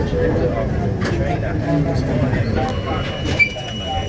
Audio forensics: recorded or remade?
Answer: recorded